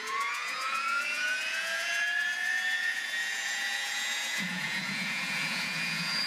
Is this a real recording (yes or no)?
no